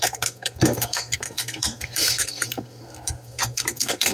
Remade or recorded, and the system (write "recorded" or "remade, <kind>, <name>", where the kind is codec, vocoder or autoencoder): remade, codec, SNAC